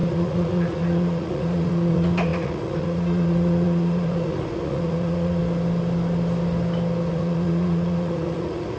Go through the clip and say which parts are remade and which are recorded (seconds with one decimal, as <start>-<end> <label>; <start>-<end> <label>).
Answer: 0.0-5.4 remade; 5.4-7.1 recorded; 7.1-8.8 remade